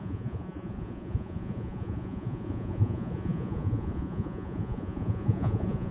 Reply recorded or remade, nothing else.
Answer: remade